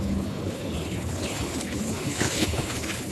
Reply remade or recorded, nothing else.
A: remade